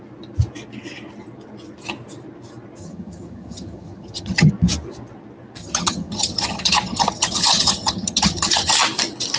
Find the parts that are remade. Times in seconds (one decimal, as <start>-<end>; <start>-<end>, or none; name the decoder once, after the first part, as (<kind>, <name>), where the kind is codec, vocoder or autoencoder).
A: 2.8-4.5 (vocoder, HiFi-GAN); 5.6-8.7